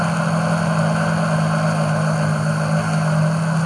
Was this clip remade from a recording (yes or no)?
no